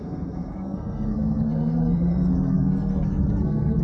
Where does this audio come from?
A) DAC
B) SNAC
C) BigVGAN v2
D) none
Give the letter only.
B